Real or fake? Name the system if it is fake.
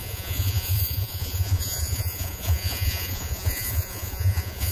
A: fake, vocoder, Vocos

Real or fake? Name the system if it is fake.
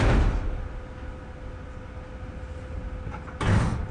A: real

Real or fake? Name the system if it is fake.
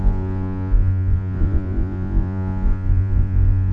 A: fake, vocoder, Vocos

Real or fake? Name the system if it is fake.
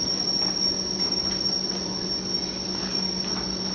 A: real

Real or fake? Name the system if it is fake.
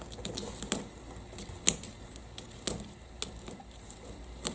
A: real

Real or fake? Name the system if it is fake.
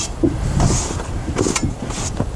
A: real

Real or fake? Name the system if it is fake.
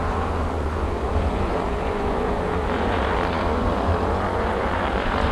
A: fake, vocoder, Vocos